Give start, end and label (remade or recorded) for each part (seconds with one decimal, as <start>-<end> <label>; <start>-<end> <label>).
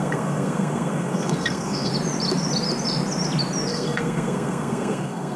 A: 0.0-1.9 remade; 1.9-3.7 recorded; 3.7-5.4 remade